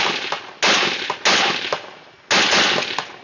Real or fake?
real